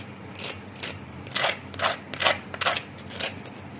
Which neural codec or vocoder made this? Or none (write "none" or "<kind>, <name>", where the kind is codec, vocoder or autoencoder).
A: none